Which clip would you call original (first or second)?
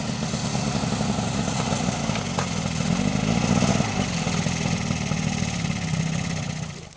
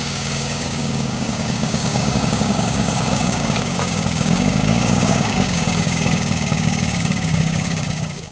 first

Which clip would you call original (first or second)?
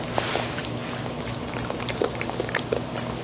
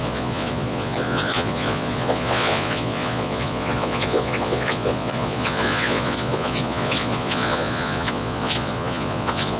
first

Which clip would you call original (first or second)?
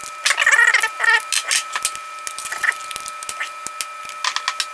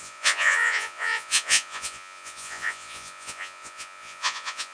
first